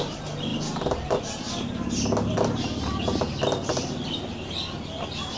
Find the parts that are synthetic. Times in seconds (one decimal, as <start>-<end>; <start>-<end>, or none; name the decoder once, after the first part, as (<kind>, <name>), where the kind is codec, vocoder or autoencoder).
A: none